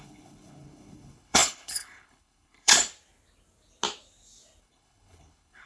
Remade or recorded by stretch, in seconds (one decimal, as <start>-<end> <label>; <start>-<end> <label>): 0.0-2.7 remade; 2.7-4.6 recorded; 4.6-5.7 remade